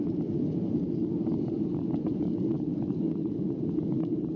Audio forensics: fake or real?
real